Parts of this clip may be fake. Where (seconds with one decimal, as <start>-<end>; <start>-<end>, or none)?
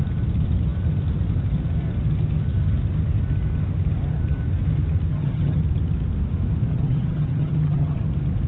5.1-5.6; 6.7-8.0